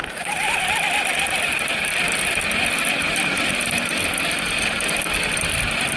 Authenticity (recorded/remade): recorded